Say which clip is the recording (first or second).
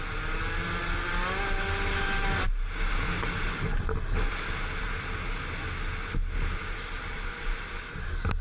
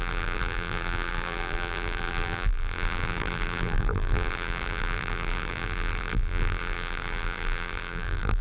first